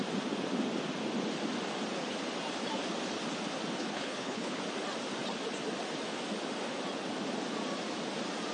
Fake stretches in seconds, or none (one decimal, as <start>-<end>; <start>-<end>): 3.8-4.6